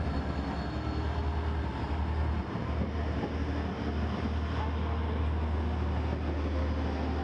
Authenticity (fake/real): real